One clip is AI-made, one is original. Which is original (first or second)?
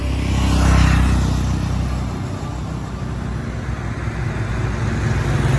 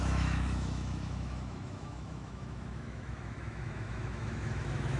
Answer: first